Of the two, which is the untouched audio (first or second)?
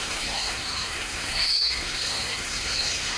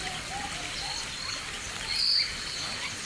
second